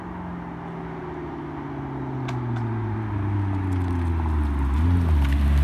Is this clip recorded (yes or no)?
yes